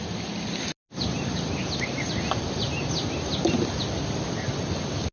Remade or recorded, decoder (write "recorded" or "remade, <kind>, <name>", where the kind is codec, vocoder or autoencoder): recorded